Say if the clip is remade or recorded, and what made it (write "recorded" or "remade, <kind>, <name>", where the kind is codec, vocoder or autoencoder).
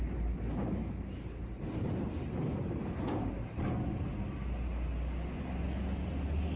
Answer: recorded